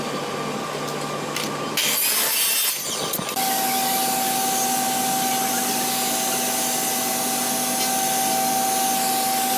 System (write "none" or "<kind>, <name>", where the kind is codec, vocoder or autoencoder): none